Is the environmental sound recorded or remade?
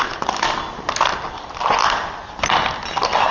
recorded